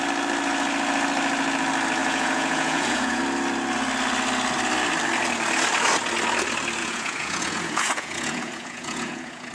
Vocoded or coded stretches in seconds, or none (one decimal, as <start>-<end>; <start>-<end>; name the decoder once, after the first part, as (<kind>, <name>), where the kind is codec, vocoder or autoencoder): 2.0-3.2 (vocoder, Vocos); 6.8-9.5